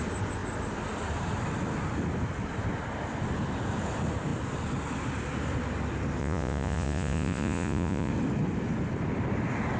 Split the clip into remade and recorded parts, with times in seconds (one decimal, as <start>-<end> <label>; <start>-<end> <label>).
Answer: 0.0-6.2 recorded; 6.2-8.1 remade; 8.1-9.8 recorded